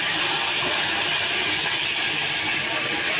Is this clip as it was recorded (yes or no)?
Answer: yes